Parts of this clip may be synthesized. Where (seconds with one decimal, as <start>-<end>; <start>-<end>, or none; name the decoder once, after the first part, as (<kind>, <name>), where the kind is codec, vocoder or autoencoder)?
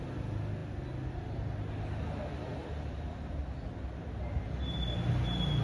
none